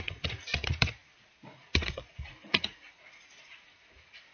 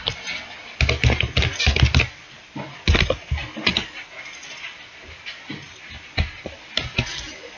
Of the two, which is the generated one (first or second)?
first